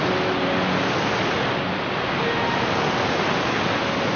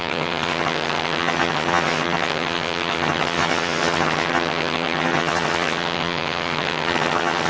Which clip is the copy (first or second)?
second